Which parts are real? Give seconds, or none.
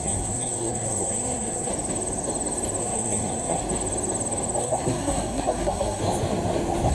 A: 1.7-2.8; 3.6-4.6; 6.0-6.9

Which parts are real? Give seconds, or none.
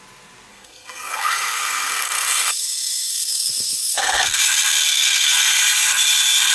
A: 0.0-0.5; 4.4-4.9; 5.6-6.5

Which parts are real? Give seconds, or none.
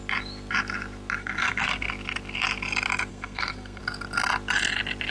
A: 0.0-1.2; 1.9-3.1; 3.8-5.1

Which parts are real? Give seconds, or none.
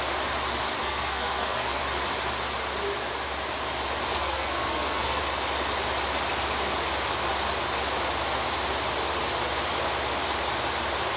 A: 0.0-0.8; 1.8-4.1; 5.2-11.2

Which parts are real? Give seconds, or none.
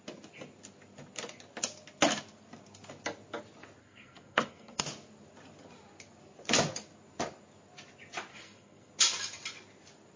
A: 0.0-3.8; 4.8-8.3; 8.9-10.2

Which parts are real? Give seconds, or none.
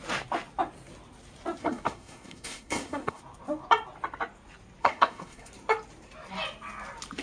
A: 0.0-1.6; 3.2-4.8; 5.5-7.2